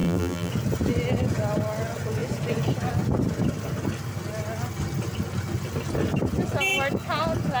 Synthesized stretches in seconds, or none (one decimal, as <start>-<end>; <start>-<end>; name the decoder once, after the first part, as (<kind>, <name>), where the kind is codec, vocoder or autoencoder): 0.0-0.5 (vocoder, BigVGAN v2)